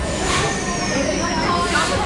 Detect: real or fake real